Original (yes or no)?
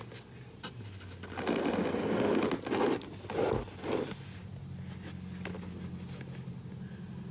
yes